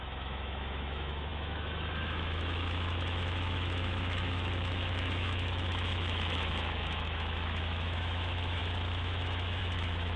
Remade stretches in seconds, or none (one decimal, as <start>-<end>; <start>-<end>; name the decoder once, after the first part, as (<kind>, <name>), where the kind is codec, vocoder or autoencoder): 0.0-10.2 (autoencoder, DAC-VAE)